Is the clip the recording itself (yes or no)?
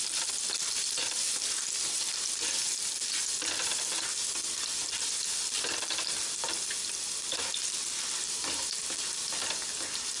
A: yes